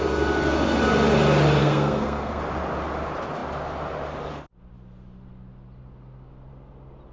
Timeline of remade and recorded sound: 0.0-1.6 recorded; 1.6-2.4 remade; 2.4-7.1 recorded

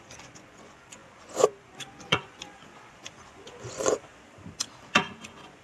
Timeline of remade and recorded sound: 0.0-4.1 remade; 4.1-4.9 recorded; 4.9-5.6 remade